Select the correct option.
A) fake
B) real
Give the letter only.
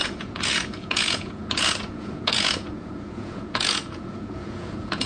A